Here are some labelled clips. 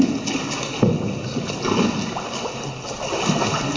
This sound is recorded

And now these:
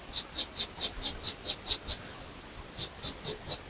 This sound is recorded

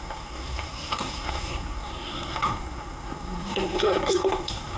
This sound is remade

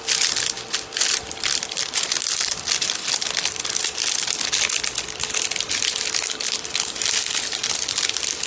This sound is recorded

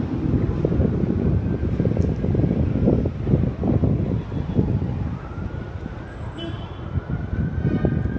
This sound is recorded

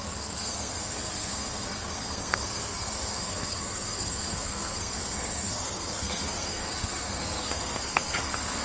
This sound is remade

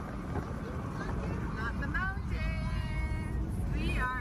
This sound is recorded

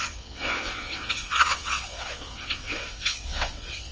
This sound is remade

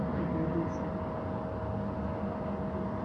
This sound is recorded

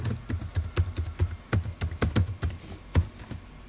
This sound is recorded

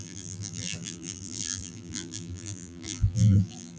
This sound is remade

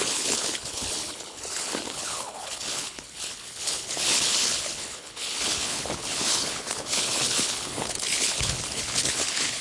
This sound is remade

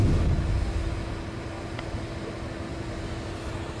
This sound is recorded